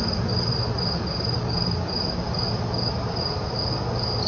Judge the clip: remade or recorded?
recorded